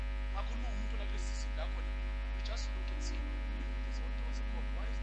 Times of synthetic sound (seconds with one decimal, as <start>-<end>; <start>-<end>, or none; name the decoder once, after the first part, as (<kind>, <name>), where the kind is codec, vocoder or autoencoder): none